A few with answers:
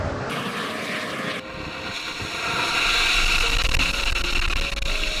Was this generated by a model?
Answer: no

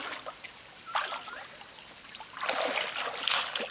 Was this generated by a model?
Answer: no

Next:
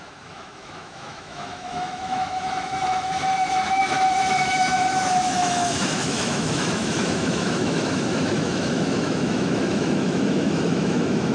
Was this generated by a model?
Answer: yes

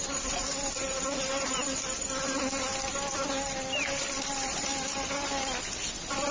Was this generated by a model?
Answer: no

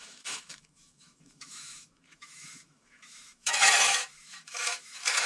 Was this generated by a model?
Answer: yes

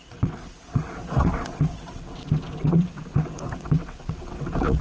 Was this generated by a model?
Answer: yes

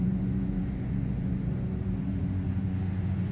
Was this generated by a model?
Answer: yes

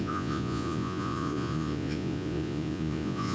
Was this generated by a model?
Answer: yes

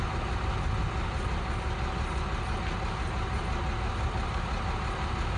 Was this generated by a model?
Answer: no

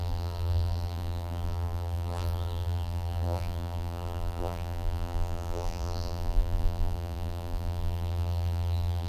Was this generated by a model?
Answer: yes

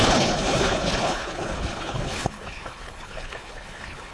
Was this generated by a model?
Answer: yes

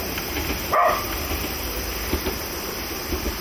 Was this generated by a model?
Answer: yes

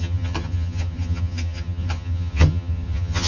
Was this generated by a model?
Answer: yes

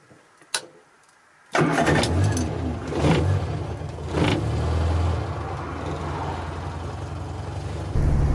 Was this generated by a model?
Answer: no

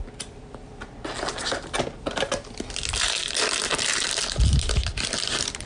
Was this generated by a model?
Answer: no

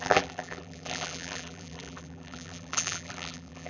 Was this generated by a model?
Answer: yes